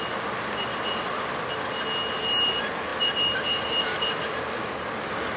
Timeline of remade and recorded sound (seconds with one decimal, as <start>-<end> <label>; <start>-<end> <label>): 0.0-5.4 recorded